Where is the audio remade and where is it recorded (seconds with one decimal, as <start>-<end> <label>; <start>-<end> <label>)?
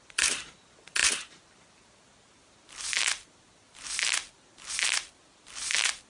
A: 0.0-6.1 recorded